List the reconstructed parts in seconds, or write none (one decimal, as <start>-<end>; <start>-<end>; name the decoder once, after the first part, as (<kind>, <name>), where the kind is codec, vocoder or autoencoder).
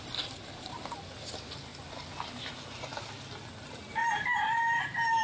0.0-1.7 (vocoder, BigVGAN v2); 3.5-5.2